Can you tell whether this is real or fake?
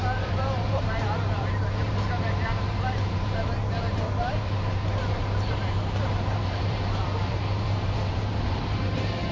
fake